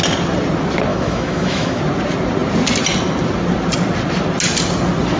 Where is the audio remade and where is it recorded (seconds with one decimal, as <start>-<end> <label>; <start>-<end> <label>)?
0.0-0.9 recorded; 0.9-1.8 remade; 1.8-5.2 recorded